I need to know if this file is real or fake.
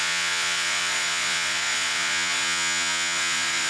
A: fake